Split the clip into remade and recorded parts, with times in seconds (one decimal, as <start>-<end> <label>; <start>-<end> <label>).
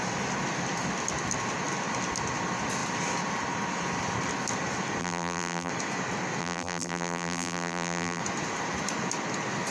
0.0-5.0 recorded; 5.0-5.7 remade; 5.7-6.4 recorded; 6.4-8.2 remade; 8.2-9.7 recorded